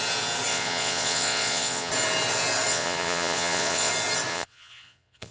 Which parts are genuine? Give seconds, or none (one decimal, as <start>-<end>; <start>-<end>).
0.0-0.5; 1.9-2.7; 3.9-4.3